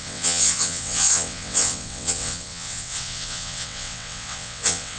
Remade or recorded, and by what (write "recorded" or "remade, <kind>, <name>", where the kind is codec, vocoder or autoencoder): remade, vocoder, WaveNeXt